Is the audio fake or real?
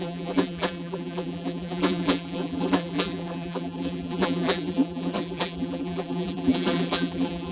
fake